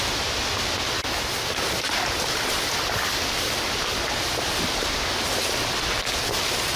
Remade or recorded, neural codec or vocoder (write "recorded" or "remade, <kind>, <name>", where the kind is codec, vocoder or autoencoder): recorded